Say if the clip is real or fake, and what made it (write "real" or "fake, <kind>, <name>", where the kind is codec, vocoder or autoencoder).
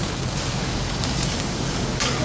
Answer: fake, codec, DAC